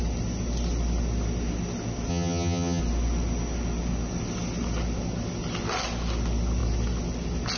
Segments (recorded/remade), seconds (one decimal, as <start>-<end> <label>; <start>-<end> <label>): 0.0-2.1 recorded; 2.1-2.8 remade; 2.8-7.6 recorded